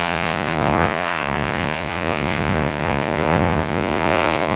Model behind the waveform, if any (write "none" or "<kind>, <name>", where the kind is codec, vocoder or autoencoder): vocoder, Vocos